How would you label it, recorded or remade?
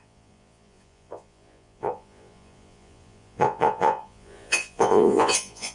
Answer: remade